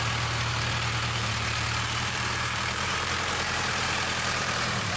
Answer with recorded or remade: remade